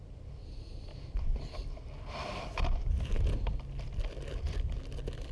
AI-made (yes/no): no